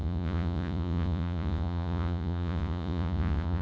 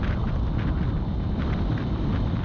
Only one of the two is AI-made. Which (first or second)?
first